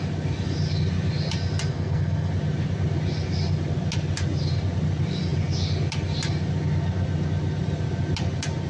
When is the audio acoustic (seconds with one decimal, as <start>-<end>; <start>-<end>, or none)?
0.0-1.7; 2.3-8.7